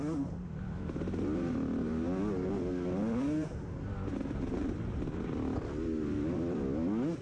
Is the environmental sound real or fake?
real